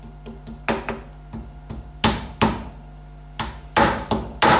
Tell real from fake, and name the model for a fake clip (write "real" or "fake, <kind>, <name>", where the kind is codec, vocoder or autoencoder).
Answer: real